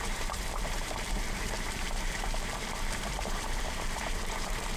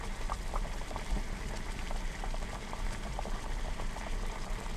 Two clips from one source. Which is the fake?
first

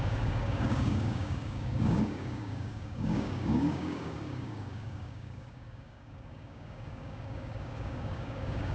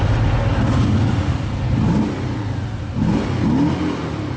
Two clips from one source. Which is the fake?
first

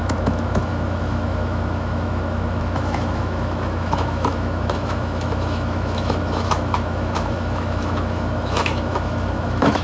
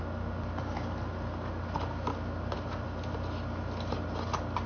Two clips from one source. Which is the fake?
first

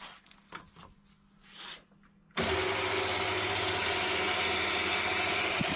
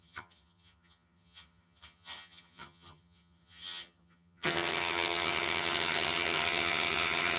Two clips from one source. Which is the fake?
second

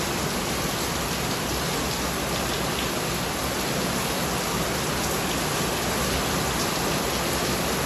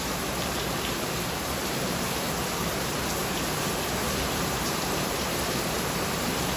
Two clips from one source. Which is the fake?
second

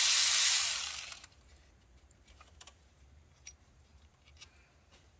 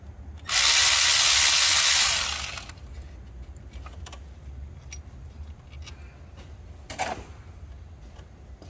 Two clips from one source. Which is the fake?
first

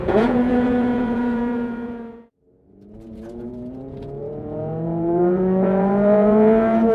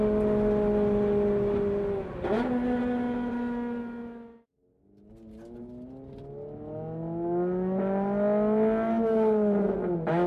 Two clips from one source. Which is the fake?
first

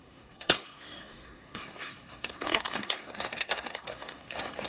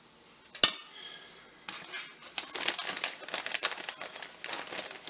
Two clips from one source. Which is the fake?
first